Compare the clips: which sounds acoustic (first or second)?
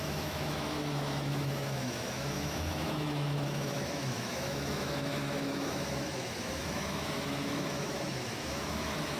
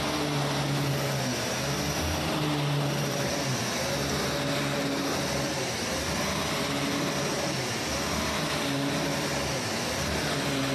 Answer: second